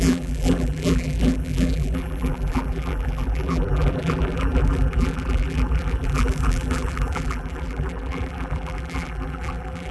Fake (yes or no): yes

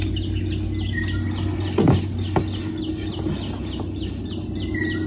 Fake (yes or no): no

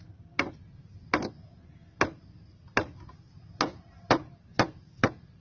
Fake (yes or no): no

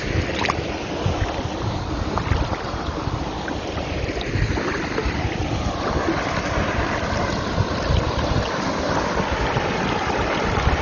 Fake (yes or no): no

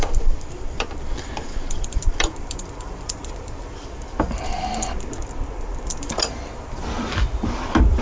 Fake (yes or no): yes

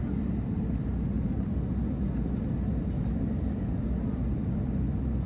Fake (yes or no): no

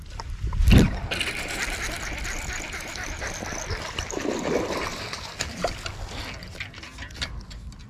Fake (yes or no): no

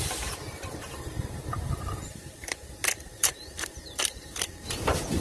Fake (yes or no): yes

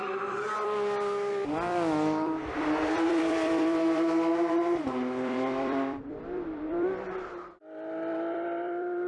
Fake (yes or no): yes